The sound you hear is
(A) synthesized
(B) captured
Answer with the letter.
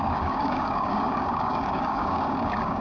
A